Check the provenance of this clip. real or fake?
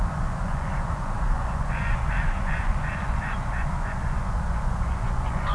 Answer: fake